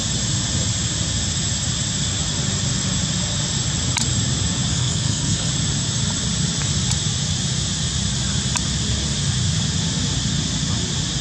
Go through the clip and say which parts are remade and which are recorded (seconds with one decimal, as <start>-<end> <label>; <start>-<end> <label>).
0.0-4.7 recorded; 4.7-5.5 remade; 5.5-11.2 recorded